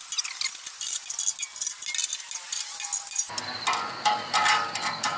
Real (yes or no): yes